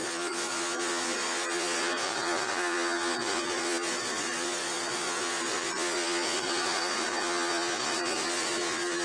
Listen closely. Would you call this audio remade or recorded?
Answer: remade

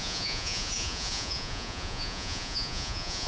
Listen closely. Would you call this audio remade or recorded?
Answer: remade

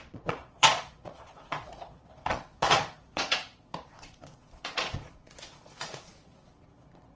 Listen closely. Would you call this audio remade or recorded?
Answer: remade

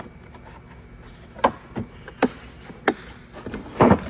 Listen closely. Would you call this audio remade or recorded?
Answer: recorded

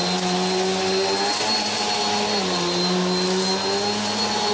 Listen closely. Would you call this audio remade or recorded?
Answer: recorded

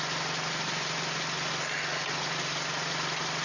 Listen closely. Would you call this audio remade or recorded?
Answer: recorded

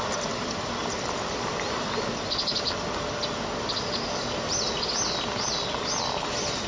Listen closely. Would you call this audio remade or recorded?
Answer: recorded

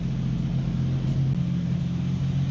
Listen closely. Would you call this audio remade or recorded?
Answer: recorded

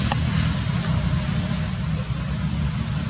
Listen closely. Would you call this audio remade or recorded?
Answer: recorded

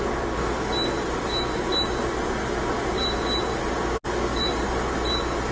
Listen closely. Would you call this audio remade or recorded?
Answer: recorded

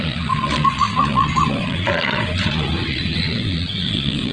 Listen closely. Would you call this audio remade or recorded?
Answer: remade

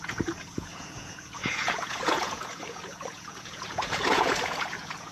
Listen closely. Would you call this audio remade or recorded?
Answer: remade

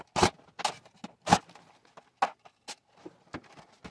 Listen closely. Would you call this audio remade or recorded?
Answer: recorded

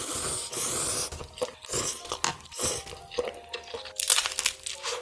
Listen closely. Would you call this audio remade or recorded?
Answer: recorded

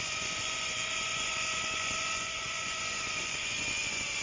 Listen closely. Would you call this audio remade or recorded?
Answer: remade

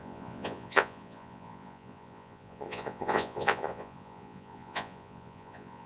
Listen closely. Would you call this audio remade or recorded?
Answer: remade